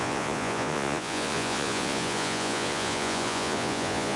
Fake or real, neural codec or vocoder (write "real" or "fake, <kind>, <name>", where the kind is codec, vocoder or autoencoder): fake, vocoder, Vocos